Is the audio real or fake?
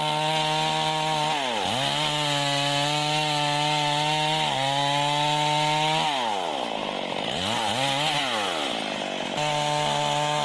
real